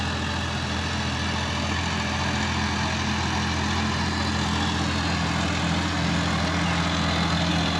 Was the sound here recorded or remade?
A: recorded